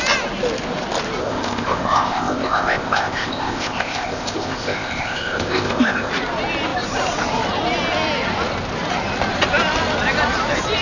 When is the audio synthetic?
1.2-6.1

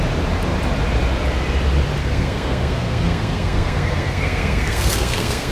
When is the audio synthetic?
2.0-5.5

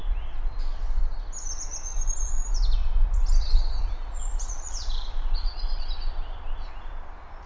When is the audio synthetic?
3.4-5.9